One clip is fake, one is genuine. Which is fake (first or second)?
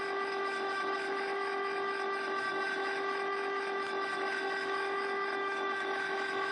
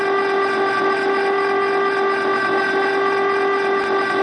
first